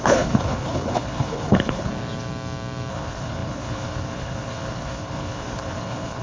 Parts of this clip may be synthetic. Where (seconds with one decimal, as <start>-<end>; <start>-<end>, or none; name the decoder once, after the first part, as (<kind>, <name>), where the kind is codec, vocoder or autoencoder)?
0.0-1.9 (codec, HILCodec); 2.9-6.2